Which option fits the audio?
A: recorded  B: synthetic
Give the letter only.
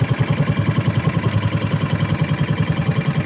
A